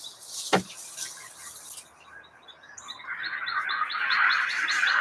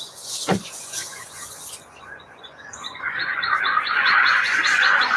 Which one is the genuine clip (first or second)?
first